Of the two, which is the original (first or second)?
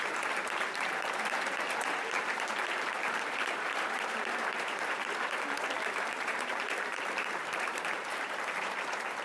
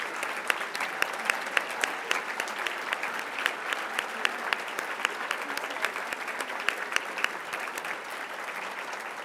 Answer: second